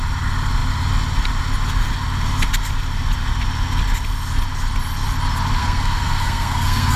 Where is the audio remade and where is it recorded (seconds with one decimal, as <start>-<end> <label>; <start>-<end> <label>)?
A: 0.0-5.6 recorded; 5.6-7.0 remade